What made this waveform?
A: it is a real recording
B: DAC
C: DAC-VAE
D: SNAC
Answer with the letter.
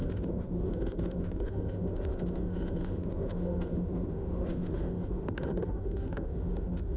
C